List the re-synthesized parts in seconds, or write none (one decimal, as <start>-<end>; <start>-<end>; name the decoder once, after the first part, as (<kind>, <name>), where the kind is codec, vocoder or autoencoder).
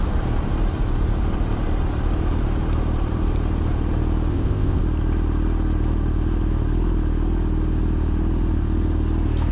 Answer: 4.3-4.8 (codec, ZipCodec)